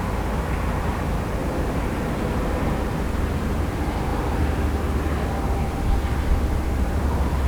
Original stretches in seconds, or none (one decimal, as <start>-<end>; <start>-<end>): 0.0-1.4; 2.1-7.5